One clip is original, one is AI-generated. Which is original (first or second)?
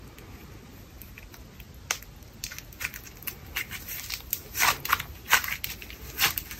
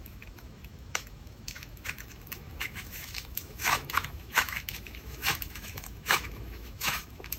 first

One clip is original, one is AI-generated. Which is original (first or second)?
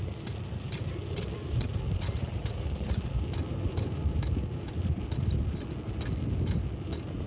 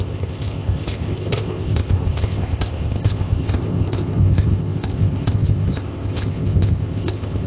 first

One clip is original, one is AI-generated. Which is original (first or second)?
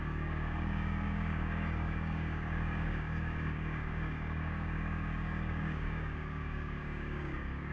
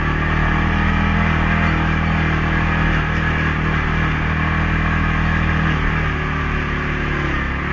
second